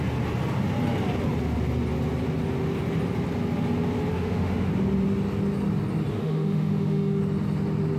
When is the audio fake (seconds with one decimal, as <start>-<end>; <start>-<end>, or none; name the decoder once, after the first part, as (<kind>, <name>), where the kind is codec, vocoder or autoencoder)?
4.1-4.7 (autoencoder, DAC-VAE); 6.1-7.2